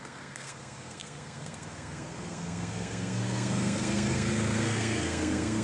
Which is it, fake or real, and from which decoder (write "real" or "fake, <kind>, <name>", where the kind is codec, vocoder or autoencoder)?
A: fake, codec, SNAC